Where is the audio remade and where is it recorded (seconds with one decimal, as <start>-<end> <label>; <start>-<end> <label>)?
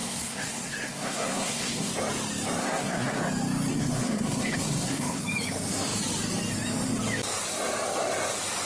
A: 0.0-1.9 remade; 1.9-2.6 recorded; 2.6-3.2 remade; 3.2-3.7 recorded; 3.7-5.2 remade; 5.2-8.7 recorded